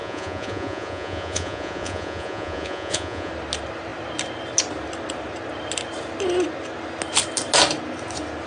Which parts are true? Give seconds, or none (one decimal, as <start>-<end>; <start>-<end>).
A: 3.3-8.5